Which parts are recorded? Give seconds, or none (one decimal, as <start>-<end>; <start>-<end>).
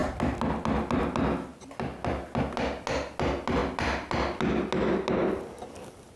0.0-6.2